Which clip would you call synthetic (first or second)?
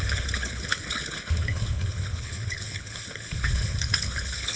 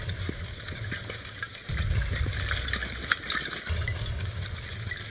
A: first